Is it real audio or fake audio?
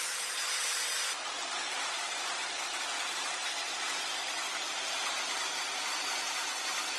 real